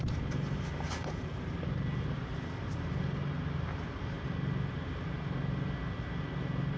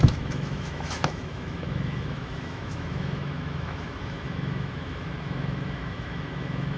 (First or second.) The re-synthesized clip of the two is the second